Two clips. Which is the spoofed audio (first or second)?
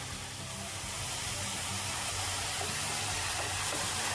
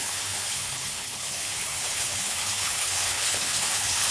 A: second